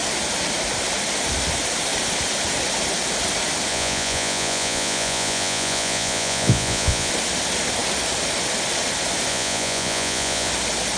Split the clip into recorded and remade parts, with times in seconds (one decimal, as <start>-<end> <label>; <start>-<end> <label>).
0.0-3.7 recorded; 3.7-7.1 remade; 7.1-9.3 recorded; 9.3-10.5 remade; 10.5-11.0 recorded